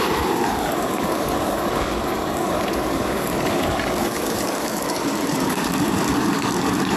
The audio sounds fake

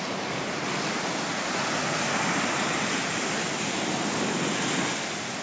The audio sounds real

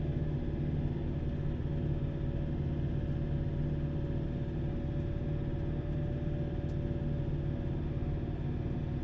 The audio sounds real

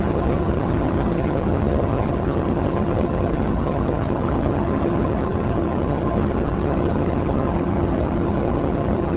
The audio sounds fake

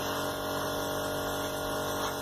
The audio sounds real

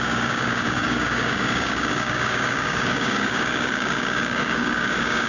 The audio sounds fake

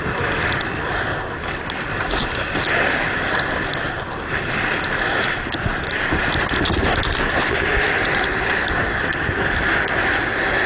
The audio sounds real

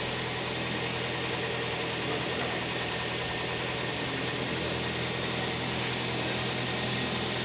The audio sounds real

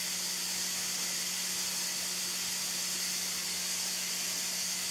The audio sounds real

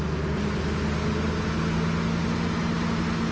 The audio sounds real